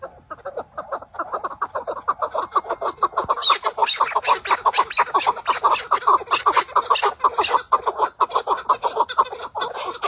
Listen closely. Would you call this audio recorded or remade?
recorded